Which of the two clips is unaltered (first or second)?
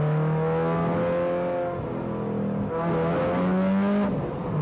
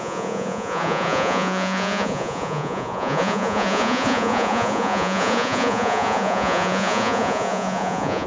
first